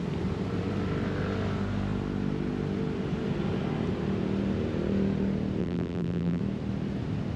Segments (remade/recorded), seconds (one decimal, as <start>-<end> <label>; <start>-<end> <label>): 0.0-5.6 recorded; 5.6-6.4 remade; 6.4-7.4 recorded